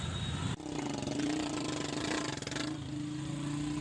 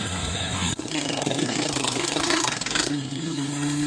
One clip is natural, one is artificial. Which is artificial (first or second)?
second